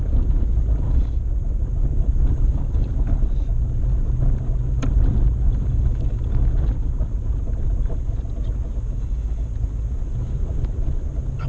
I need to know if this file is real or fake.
real